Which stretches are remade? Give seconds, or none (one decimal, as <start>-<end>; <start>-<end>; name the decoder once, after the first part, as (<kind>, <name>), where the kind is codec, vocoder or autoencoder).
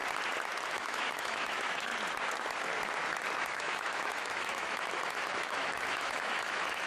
0.7-1.9 (autoencoder, DAC-VAE); 3.4-6.9